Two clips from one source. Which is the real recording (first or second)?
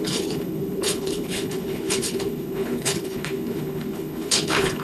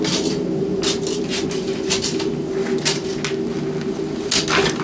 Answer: second